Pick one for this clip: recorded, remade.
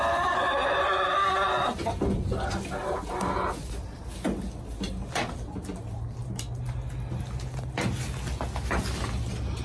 recorded